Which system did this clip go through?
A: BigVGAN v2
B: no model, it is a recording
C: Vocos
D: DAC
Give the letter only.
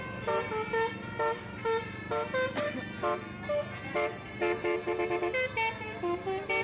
B